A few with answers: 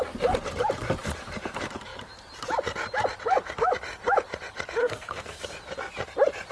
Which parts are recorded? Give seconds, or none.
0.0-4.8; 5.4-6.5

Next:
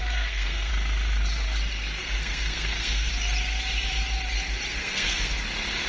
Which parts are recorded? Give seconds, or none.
0.7-2.0; 3.1-4.7; 5.3-5.9

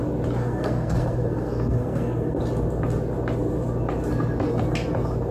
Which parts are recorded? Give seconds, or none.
0.0-0.4; 2.4-5.3

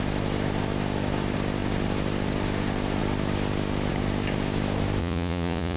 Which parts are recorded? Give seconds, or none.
0.0-5.0